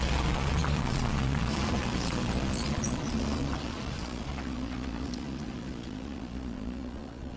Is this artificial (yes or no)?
yes